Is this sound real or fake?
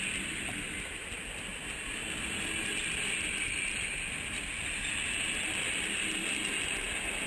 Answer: real